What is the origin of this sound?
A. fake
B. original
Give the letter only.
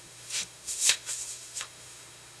A